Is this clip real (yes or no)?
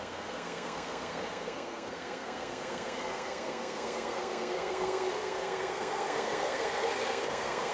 no